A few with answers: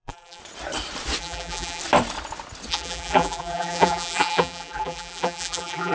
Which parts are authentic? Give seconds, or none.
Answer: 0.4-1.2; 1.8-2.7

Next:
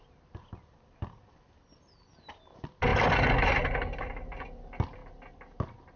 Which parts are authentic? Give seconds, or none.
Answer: 0.0-6.0